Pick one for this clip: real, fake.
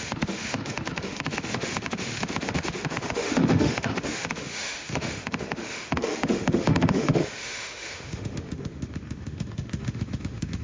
fake